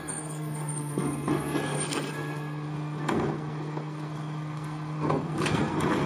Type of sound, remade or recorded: remade